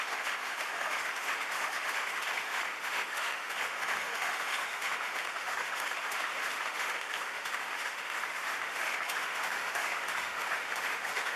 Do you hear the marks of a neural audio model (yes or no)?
yes